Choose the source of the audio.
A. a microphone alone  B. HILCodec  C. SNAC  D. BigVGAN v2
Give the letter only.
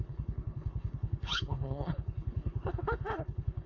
B